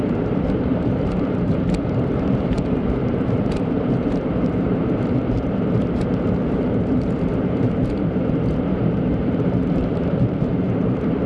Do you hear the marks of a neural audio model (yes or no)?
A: yes